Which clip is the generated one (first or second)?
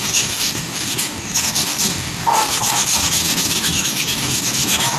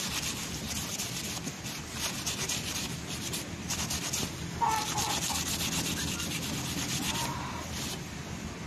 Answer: first